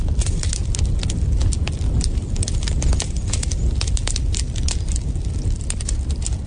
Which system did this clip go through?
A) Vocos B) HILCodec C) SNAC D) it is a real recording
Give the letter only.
D